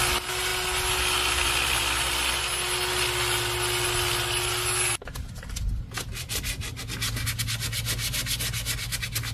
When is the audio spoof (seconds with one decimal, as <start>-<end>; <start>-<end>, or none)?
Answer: none